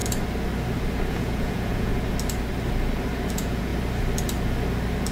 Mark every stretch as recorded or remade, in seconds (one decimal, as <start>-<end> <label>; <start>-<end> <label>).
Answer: 0.0-1.1 recorded; 1.1-1.9 remade; 1.9-3.3 recorded; 3.3-3.7 remade; 3.7-5.1 recorded